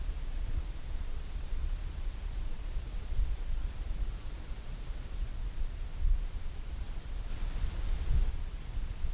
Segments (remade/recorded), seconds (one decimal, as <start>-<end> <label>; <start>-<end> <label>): 0.0-5.3 remade; 5.3-6.7 recorded; 6.7-7.3 remade; 7.3-8.3 recorded; 8.3-9.1 remade